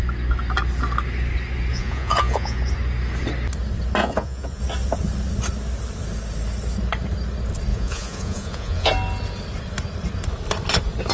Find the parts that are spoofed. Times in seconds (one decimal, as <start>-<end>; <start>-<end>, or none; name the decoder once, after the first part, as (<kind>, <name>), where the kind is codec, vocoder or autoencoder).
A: 1.7-2.6 (vocoder, Vocos); 4.0-4.6; 7.7-8.9